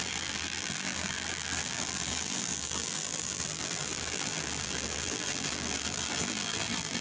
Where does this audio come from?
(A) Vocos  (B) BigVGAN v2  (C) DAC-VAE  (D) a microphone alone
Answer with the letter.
B